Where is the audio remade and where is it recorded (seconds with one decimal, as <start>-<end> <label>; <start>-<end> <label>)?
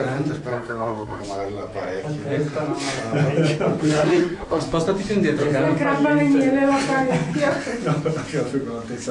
0.0-0.5 recorded; 0.5-1.2 remade; 1.2-3.8 recorded; 3.8-4.6 remade; 4.6-9.1 recorded